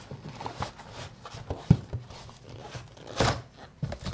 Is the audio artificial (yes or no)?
yes